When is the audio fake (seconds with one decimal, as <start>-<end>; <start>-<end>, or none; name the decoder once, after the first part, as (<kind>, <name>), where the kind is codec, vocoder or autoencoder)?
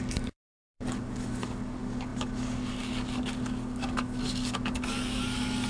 0.0-5.7 (codec, DAC)